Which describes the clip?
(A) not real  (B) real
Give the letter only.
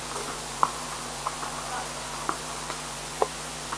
A